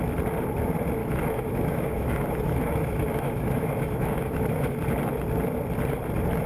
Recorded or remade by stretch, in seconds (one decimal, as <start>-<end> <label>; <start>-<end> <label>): 0.0-1.0 recorded; 1.0-4.8 remade; 4.8-6.5 recorded